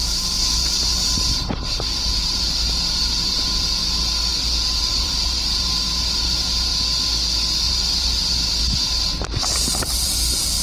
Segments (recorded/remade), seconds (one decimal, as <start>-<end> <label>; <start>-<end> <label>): 0.0-3.8 remade; 3.8-4.8 recorded; 4.8-6.7 remade; 6.7-7.7 recorded; 7.7-10.6 remade